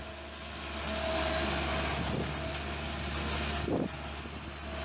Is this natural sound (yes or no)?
yes